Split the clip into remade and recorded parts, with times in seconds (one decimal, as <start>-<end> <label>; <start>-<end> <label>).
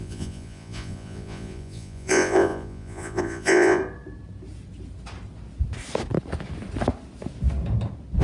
0.0-3.8 remade; 3.8-8.2 recorded